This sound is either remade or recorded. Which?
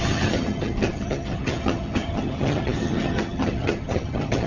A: remade